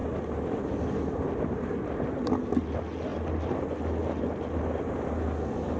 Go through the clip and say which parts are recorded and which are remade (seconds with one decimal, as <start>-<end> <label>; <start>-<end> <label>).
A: 0.0-5.8 recorded